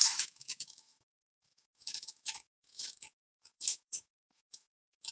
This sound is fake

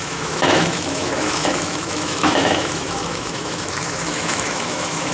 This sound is fake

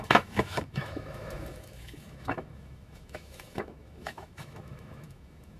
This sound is fake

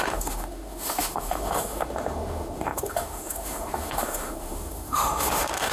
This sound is fake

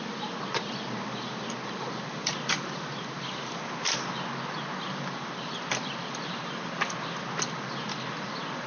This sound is real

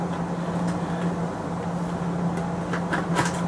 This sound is real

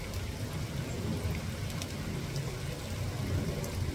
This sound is real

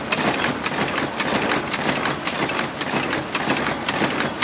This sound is real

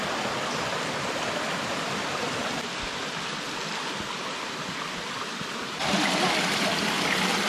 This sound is real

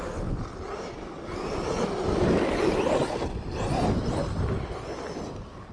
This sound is real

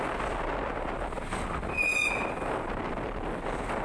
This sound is real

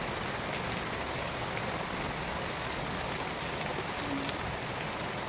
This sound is real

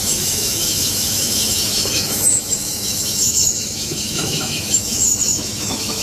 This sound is fake